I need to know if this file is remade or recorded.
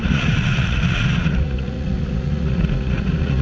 remade